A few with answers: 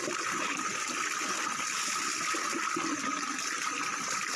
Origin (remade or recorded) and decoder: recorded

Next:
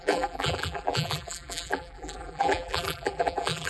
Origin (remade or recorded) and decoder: remade, vocoder, BigVGAN v2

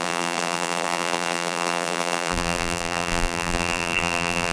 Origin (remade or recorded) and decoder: remade, vocoder, BigVGAN v2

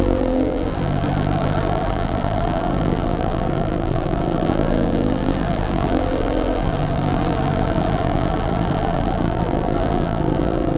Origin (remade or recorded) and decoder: remade, vocoder, BigVGAN v2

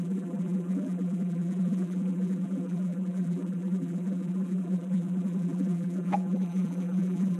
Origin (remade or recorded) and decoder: remade, vocoder, BigVGAN v2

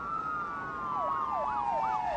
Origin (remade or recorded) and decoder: recorded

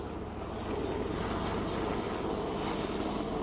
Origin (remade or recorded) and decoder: recorded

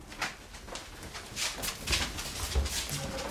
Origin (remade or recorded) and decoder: recorded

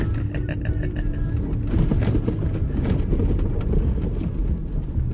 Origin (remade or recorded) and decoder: recorded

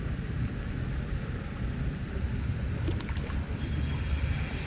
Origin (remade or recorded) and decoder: recorded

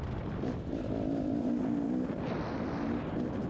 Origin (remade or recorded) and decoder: recorded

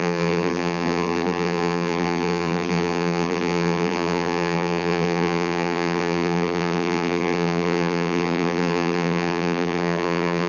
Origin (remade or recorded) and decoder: remade, vocoder, BigVGAN v2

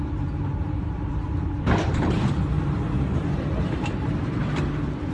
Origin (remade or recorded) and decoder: remade, vocoder, BigVGAN v2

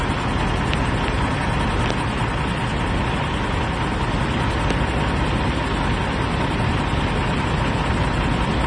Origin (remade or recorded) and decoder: recorded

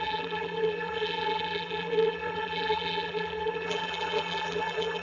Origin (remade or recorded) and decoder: remade, vocoder, BigVGAN v2